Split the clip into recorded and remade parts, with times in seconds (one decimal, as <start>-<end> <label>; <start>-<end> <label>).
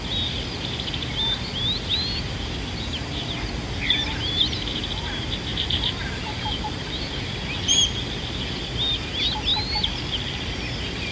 0.0-5.5 recorded; 5.5-7.0 remade; 7.0-9.5 recorded; 9.5-10.0 remade; 10.0-11.1 recorded